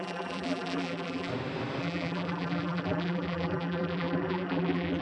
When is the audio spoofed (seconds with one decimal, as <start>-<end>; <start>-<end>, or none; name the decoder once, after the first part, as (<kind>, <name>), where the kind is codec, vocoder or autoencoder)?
0.0-1.3 (vocoder, BigVGAN v2); 1.8-5.0